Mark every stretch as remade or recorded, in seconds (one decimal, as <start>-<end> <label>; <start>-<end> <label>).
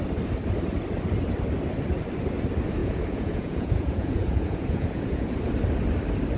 0.0-2.8 recorded; 2.8-5.3 remade; 5.3-6.4 recorded